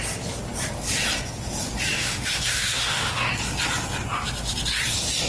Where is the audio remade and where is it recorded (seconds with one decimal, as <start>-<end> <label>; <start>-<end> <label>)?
0.0-1.9 recorded; 1.9-3.3 remade; 3.3-5.3 recorded